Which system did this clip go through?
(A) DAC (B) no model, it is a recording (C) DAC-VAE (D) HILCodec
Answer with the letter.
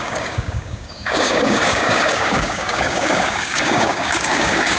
A